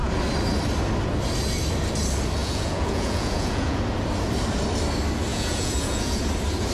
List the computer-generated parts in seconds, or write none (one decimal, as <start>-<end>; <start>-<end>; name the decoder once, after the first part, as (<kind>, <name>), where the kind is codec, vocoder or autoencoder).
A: 2.4-3.8 (vocoder, Vocos); 5.3-6.2